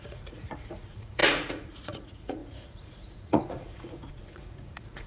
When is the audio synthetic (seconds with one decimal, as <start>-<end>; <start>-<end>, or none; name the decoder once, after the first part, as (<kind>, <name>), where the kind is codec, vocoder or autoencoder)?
0.0-5.1 (vocoder, Vocos)